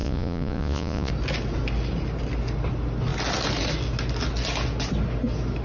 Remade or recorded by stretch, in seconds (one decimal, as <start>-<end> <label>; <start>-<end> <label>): 0.0-1.1 remade; 1.1-5.6 recorded